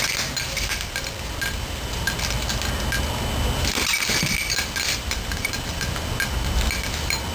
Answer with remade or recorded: recorded